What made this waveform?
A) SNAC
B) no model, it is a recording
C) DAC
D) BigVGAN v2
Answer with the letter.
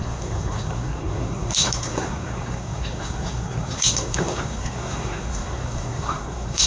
A